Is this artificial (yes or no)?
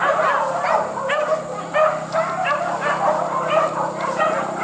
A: no